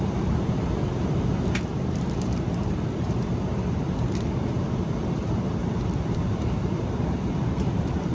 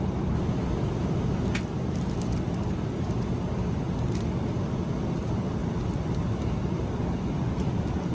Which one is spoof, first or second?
first